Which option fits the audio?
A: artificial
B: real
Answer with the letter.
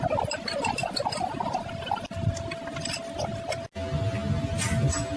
B